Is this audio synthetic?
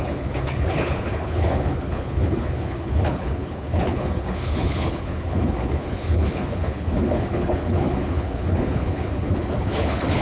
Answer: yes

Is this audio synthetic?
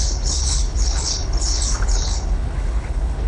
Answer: yes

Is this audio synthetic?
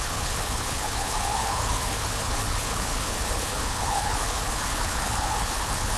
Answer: yes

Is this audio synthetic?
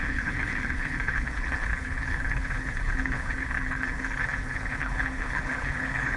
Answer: yes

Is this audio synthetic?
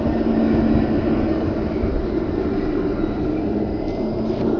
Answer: no